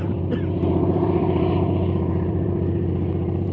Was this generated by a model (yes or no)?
yes